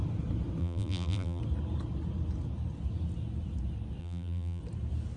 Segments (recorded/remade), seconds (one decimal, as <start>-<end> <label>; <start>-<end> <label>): 0.0-0.6 recorded; 0.6-1.4 remade; 1.4-4.0 recorded; 4.0-4.6 remade; 4.6-5.2 recorded